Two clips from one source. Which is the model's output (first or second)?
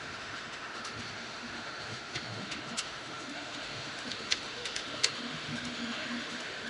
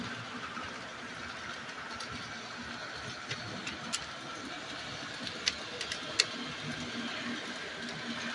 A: first